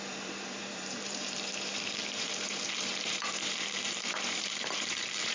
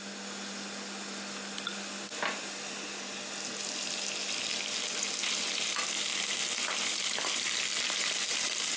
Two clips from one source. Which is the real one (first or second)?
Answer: second